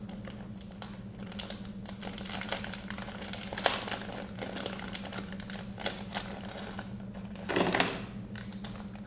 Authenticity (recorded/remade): recorded